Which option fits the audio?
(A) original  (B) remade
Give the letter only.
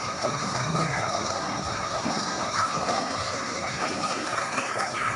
B